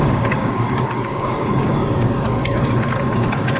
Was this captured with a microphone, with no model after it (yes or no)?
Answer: no